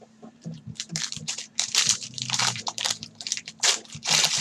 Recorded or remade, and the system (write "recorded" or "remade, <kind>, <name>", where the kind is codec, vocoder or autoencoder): remade, vocoder, BigVGAN v2